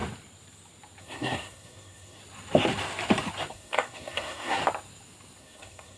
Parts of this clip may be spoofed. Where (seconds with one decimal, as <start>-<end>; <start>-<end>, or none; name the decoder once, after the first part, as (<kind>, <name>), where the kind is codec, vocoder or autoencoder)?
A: 1.0-2.2 (codec, SNAC); 3.5-4.6; 5.4-6.0

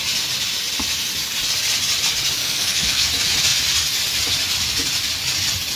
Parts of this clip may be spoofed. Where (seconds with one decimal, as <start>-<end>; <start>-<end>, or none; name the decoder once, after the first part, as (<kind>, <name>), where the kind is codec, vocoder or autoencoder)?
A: 2.4-3.1 (codec, SNAC)